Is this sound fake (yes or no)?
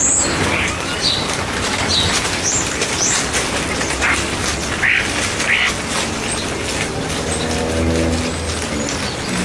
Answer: no